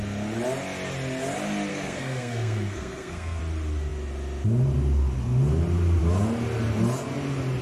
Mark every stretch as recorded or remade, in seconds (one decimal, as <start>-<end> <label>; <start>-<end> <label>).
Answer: 0.0-1.7 recorded; 1.7-3.4 remade; 3.4-7.6 recorded